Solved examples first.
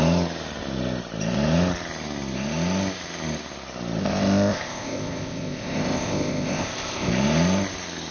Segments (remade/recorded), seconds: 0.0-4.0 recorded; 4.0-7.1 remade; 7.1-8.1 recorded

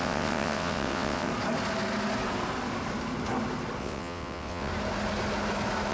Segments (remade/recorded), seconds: 0.0-1.3 remade; 1.3-3.8 recorded; 3.8-4.7 remade; 4.7-5.9 recorded

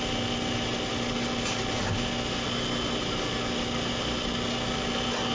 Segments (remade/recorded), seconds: 0.0-5.3 recorded

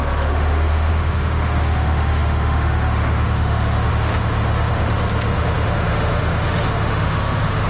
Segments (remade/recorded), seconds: 0.0-7.7 remade